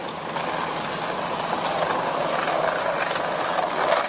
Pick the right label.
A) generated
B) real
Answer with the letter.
B